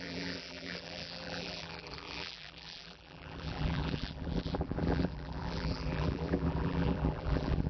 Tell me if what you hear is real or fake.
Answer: fake